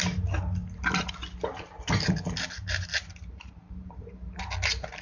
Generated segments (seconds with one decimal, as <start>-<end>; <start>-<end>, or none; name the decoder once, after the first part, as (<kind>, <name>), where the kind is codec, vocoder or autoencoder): 2.9-4.4 (vocoder, BigVGAN v2)

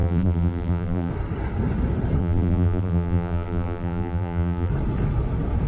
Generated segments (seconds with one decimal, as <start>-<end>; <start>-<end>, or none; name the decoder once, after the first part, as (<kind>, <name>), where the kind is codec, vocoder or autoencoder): 0.0-1.1 (vocoder, BigVGAN v2); 2.2-4.7

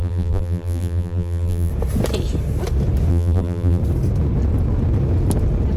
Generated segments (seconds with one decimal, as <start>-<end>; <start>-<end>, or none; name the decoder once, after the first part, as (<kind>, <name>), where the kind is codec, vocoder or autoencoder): 0.0-1.7 (vocoder, BigVGAN v2); 3.1-3.8

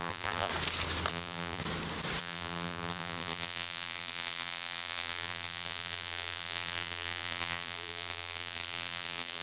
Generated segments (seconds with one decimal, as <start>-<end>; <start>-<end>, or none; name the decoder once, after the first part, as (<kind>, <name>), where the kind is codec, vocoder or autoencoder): 0.0-0.5 (vocoder, BigVGAN v2); 1.1-1.6; 2.2-9.4

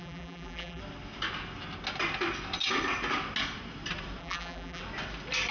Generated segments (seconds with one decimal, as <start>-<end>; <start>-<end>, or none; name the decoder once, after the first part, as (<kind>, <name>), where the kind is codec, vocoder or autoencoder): 0.0-0.8 (vocoder, BigVGAN v2); 4.2-4.8

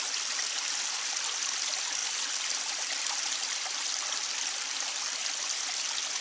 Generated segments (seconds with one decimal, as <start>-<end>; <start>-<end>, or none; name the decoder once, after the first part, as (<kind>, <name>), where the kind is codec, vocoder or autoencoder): 2.0-3.4 (vocoder, BigVGAN v2); 5.2-5.8